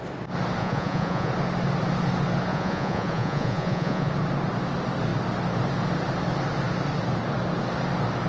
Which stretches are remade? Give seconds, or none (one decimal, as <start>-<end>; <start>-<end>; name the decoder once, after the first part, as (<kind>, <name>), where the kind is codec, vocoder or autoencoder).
0.6-1.3 (vocoder, Vocos); 2.5-4.1